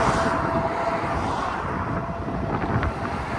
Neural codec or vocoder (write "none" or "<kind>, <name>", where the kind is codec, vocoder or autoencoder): none